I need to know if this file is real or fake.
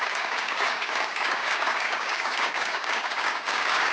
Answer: fake